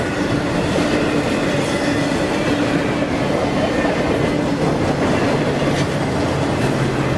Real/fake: real